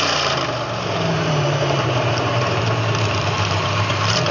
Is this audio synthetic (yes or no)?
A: yes